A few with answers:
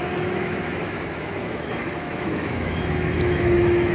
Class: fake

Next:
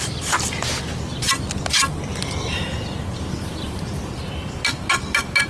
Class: real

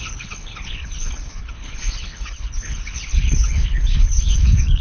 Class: fake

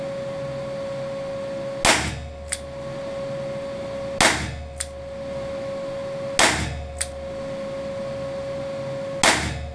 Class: real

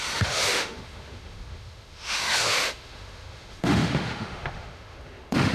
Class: fake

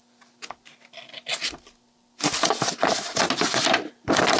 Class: real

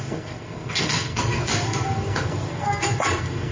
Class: fake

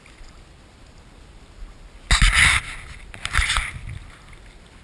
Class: real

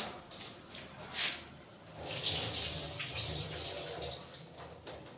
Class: fake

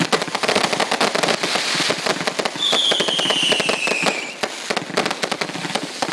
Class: real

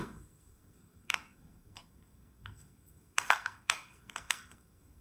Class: fake